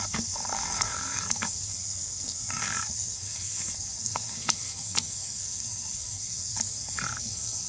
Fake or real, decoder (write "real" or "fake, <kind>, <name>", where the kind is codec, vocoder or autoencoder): fake, codec, SNAC